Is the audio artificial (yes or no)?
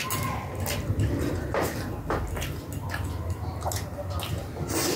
no